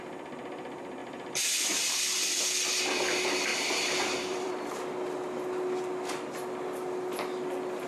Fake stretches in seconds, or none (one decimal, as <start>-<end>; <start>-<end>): 1.0-2.4; 3.5-4.5